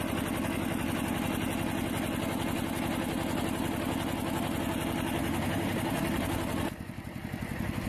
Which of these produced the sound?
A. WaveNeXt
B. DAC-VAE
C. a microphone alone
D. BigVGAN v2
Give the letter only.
C